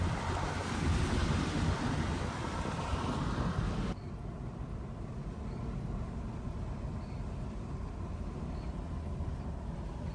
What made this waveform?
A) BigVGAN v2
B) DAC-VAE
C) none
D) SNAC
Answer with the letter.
C